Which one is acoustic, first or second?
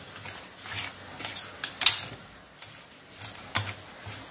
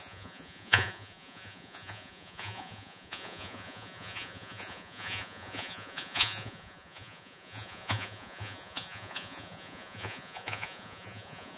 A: first